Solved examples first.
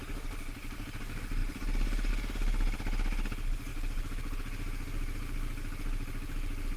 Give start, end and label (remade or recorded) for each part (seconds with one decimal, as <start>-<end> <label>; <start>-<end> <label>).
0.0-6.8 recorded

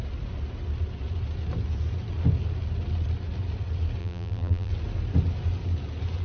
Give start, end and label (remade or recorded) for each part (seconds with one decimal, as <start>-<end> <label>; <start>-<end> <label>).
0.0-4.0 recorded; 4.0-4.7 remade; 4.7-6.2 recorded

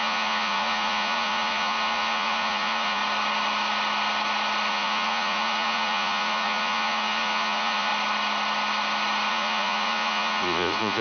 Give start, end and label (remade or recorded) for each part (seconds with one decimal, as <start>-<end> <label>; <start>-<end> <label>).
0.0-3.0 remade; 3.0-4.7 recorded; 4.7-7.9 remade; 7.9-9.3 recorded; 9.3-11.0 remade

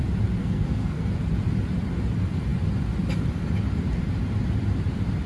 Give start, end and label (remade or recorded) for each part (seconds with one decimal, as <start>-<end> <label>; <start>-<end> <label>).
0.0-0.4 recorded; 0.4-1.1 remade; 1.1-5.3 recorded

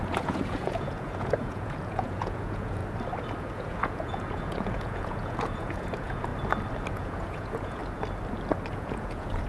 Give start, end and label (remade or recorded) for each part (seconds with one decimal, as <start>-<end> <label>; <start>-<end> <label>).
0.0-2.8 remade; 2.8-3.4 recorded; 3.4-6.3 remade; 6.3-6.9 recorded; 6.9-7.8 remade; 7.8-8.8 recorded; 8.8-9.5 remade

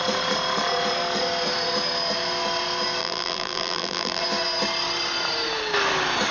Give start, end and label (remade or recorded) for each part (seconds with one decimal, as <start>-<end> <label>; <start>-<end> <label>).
0.0-3.0 recorded; 3.0-4.2 remade; 4.2-6.3 recorded